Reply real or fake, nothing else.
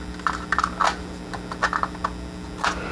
real